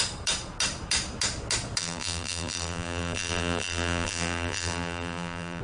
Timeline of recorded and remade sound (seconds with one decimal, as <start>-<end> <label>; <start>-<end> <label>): 0.0-1.8 recorded; 1.8-5.6 remade